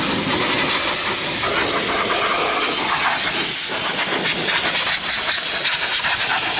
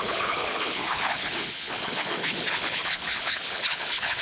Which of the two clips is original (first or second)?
first